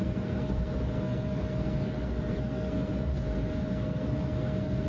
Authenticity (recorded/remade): remade